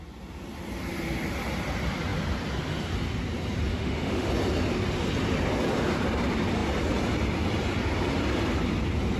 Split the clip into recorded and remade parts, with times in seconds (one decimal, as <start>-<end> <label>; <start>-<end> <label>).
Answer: 0.0-3.7 recorded; 3.7-4.3 remade; 4.3-9.2 recorded